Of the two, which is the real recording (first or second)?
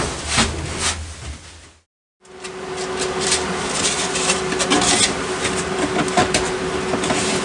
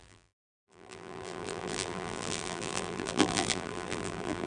first